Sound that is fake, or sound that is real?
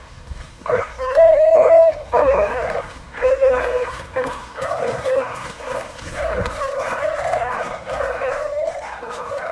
fake